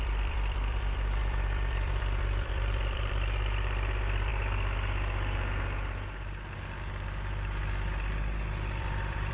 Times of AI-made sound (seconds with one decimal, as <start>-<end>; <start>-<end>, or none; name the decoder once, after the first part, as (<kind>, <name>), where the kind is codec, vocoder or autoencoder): 0.0-4.3 (vocoder, BigVGAN v2); 8.8-9.3